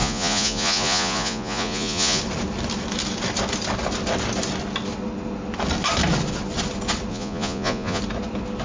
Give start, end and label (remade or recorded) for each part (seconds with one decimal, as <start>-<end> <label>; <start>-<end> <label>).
0.0-2.2 remade; 2.2-7.1 recorded; 7.1-8.0 remade; 8.0-8.6 recorded